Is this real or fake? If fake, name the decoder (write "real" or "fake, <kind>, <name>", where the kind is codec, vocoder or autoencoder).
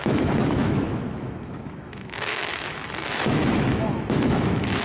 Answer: fake, autoencoder, DAC-VAE